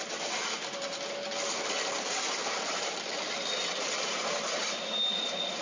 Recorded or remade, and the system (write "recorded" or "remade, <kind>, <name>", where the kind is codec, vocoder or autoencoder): recorded